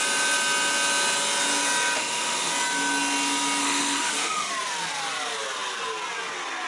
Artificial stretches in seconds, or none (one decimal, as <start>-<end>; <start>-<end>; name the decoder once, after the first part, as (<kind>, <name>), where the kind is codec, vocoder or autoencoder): 2.0-2.5 (autoencoder, DAC-VAE); 3.6-4.5